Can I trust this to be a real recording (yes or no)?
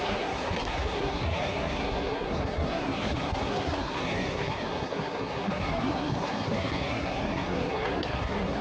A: no